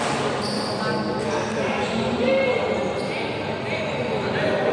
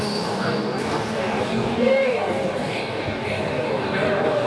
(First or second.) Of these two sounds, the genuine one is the first